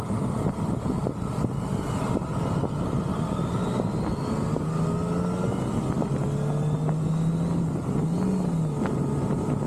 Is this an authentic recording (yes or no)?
yes